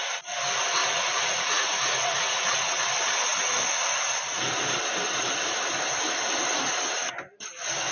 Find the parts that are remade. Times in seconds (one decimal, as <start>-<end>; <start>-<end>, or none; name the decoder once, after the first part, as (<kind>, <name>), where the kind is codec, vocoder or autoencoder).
0.8-2.8 (vocoder, Vocos)